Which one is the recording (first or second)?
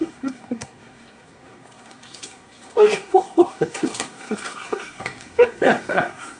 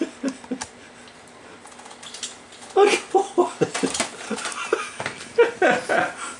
second